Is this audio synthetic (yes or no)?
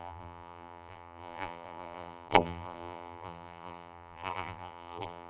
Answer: yes